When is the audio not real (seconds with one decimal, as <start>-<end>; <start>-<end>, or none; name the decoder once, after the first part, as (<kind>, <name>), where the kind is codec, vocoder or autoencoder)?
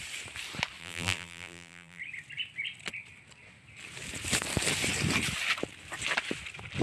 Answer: 0.8-2.0 (vocoder, BigVGAN v2)